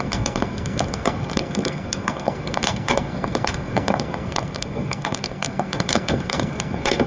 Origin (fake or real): fake